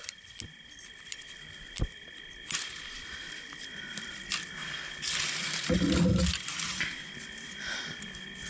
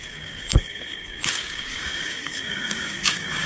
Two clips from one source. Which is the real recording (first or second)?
first